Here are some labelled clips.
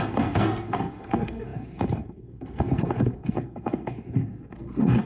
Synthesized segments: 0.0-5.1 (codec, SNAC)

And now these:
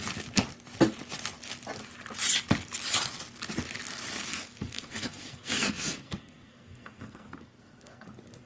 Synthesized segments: 4.3-8.1 (codec, SNAC)

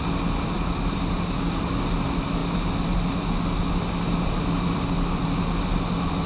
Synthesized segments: none